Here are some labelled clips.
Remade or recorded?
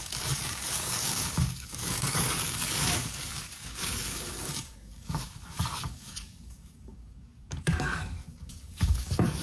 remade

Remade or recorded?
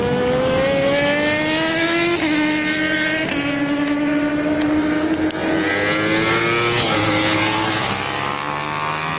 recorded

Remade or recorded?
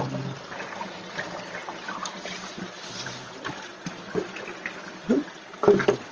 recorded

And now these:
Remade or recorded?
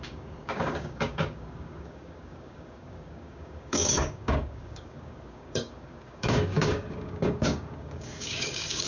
remade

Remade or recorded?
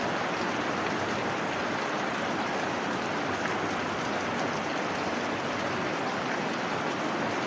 recorded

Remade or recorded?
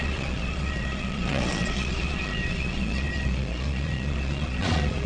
remade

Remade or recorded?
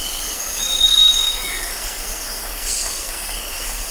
remade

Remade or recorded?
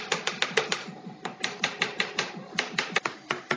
recorded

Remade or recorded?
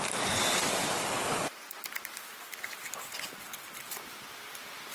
recorded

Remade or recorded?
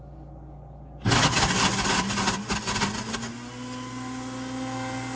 recorded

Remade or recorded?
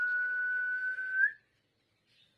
recorded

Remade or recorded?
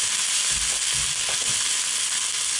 recorded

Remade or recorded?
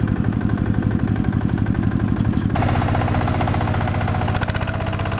recorded